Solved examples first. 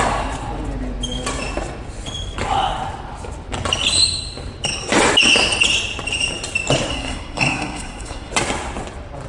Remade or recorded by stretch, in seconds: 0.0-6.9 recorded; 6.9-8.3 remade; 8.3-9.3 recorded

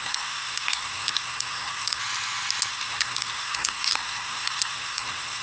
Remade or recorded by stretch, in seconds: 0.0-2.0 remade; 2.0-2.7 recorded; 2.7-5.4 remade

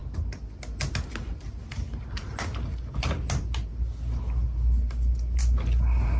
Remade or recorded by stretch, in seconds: 0.0-6.2 recorded